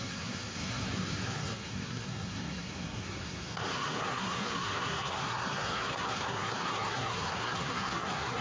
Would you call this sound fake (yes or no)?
yes